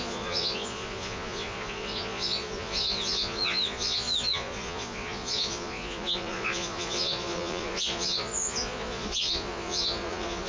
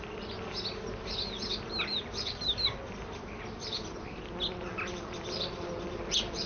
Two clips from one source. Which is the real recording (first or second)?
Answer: second